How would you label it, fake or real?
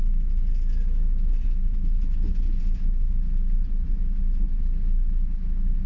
real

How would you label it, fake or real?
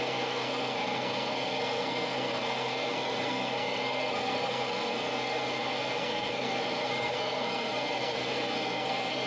fake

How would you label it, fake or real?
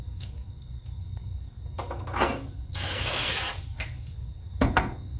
fake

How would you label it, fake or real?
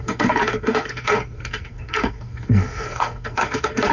fake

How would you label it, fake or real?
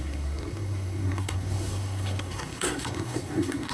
fake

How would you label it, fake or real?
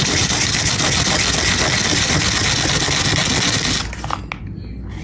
real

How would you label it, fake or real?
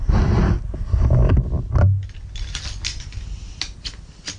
real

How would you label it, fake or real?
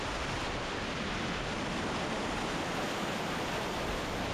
real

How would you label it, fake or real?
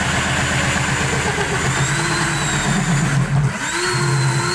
real